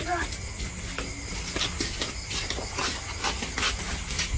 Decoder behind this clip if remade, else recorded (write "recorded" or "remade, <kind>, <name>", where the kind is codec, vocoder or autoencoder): recorded